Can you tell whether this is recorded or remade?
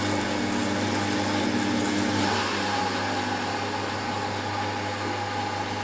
recorded